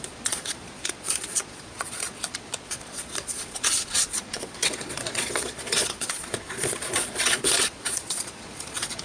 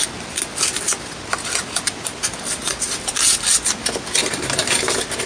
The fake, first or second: first